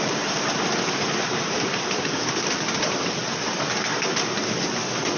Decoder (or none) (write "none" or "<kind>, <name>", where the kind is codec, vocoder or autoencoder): none